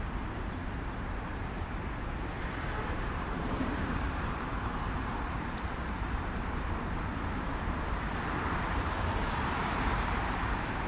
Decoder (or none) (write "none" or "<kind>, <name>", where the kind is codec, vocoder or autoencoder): vocoder, BigVGAN v2